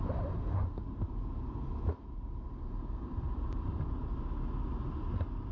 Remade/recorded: recorded